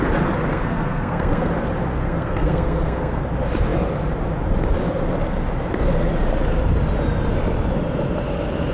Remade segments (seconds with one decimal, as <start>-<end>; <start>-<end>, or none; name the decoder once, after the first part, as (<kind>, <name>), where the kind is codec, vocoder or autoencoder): 0.5-1.5 (codec, SNAC); 2.0-3.2